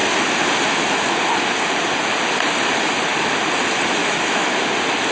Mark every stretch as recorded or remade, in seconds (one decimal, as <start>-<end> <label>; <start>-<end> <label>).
0.0-4.0 recorded; 4.0-4.5 remade; 4.5-5.1 recorded